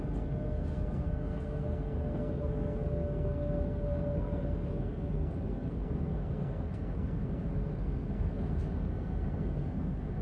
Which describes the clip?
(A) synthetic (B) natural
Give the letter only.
A